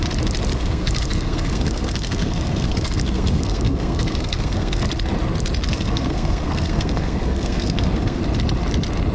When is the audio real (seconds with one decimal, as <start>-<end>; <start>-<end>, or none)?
0.0-0.5; 4.8-5.7; 8.2-9.1